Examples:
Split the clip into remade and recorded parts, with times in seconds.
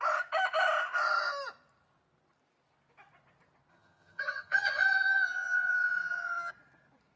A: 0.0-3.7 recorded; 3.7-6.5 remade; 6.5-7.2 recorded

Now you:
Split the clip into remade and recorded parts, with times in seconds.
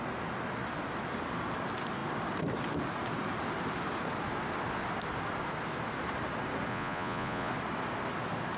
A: 0.0-6.7 recorded; 6.7-7.5 remade; 7.5-8.6 recorded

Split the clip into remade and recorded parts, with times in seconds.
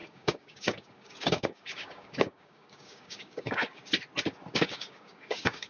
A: 0.0-3.8 remade; 3.8-4.5 recorded; 4.5-5.7 remade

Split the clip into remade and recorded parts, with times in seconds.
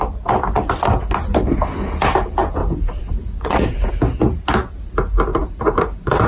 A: 0.0-2.6 recorded; 2.6-3.9 remade; 3.9-5.3 recorded; 5.3-6.3 remade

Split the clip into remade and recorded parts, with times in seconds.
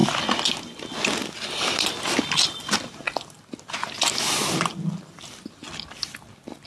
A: 0.0-6.7 recorded